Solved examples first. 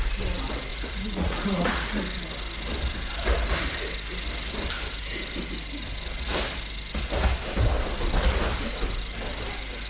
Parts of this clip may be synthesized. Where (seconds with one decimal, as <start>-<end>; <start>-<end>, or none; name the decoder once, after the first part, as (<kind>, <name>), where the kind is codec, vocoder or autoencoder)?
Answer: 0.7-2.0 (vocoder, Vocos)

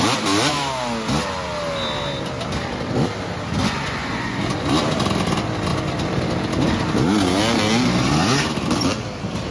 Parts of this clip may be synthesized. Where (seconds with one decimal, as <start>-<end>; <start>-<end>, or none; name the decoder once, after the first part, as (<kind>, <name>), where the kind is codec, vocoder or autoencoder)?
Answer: 3.6-4.7 (vocoder, Vocos)

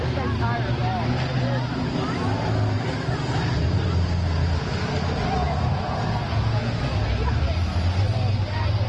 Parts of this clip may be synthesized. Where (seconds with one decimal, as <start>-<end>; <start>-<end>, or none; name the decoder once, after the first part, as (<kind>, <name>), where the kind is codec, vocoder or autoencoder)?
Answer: 5.4-6.8 (vocoder, Vocos)